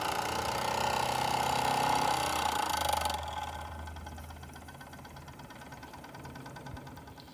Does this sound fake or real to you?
real